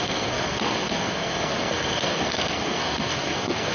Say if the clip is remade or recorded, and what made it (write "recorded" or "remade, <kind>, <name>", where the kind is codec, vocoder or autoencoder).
remade, codec, SNAC